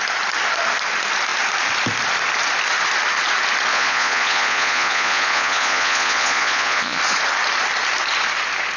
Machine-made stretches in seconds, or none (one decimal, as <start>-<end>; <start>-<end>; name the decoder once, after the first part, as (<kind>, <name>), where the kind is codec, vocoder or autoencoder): 3.7-7.0 (vocoder, Vocos)